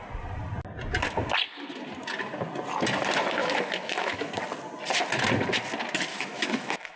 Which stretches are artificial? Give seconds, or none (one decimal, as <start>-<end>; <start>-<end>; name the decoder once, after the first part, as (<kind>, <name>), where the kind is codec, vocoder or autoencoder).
3.4-4.3 (autoencoder, DAC-VAE); 6.1-7.0